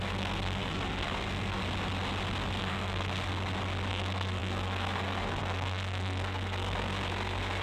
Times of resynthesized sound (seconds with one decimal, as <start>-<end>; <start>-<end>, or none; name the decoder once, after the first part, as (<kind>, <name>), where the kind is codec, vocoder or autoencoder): 0.0-1.6 (codec, SNAC); 2.6-3.3; 3.9-7.6